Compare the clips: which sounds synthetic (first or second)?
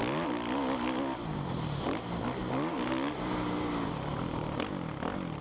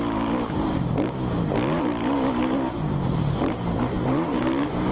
second